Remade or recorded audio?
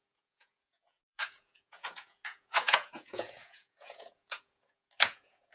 remade